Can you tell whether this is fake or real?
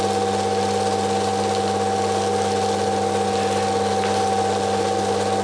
real